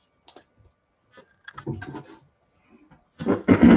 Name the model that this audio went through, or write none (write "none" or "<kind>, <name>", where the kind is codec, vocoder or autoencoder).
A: none